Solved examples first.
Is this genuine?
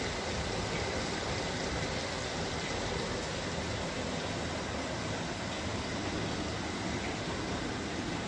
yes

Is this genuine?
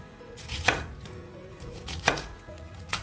no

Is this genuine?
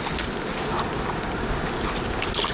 yes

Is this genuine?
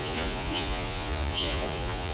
no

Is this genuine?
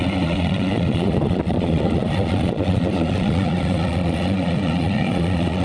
no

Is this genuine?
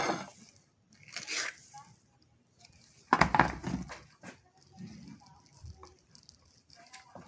yes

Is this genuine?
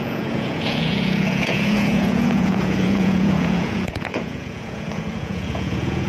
no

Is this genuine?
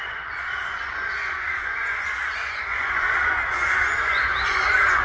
no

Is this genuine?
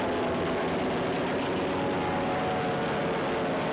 yes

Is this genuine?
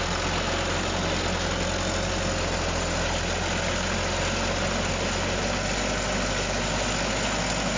yes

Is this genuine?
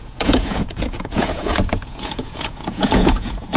no